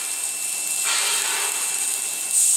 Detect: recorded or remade recorded